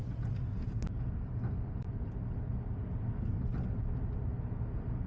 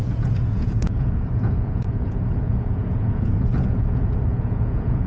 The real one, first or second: first